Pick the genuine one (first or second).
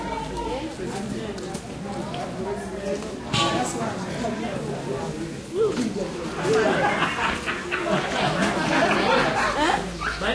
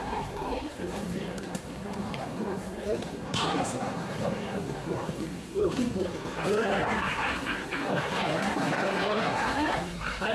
first